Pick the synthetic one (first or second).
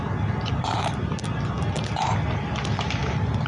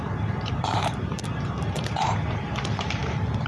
second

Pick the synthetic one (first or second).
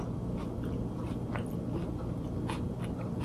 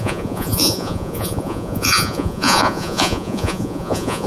second